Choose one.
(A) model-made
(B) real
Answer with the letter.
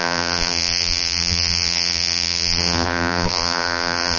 A